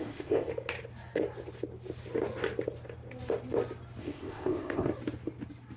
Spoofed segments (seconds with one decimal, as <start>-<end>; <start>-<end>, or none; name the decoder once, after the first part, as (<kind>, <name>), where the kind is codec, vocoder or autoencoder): 0.0-0.5 (codec, ZipCodec); 4.0-4.9